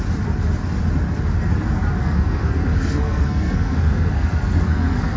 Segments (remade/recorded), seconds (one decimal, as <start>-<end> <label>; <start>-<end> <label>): 0.0-2.0 recorded; 2.0-5.2 remade